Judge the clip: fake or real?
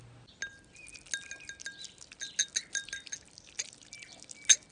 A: real